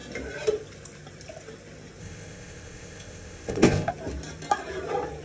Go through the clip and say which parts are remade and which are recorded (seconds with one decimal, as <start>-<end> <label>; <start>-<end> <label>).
0.0-2.0 recorded; 2.0-3.9 remade; 3.9-5.2 recorded